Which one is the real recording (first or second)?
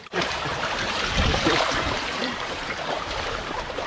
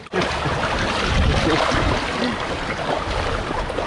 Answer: second